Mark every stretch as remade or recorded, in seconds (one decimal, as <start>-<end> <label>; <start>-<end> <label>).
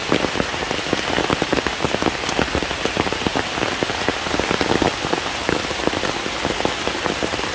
0.0-7.5 recorded